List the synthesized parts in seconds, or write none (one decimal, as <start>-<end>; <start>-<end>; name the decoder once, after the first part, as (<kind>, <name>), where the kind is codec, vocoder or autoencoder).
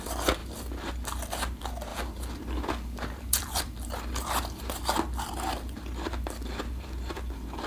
1.9-5.0 (vocoder, BigVGAN v2)